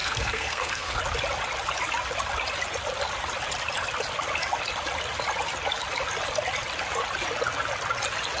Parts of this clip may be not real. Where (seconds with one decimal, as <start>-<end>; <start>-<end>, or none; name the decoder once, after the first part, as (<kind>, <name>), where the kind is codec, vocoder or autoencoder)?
0.0-1.0 (codec, SNAC)